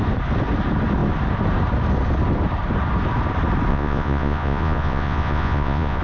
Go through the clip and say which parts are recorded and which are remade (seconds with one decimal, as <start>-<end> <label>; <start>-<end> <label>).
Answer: 0.0-3.7 recorded; 3.7-6.0 remade

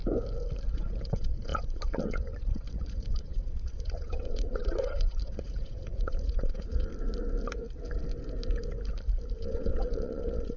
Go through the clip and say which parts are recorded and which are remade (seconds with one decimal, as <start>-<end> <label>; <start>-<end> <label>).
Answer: 0.0-0.7 recorded; 0.7-6.9 remade; 6.9-9.3 recorded; 9.3-10.6 remade

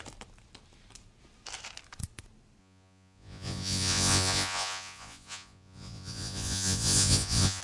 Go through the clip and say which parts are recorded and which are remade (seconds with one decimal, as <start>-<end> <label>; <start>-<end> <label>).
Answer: 0.0-2.6 recorded; 2.6-7.6 remade